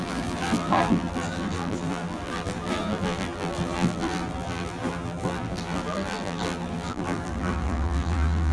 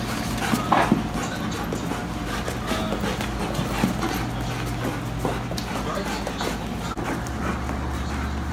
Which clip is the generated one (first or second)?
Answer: first